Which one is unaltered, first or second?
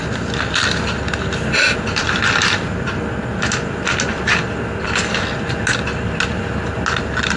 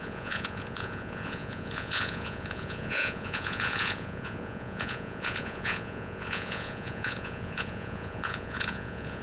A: first